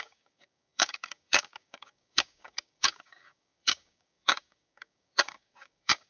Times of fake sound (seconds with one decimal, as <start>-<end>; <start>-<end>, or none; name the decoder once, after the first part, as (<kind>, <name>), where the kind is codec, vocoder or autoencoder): 0.0-6.1 (codec, DAC)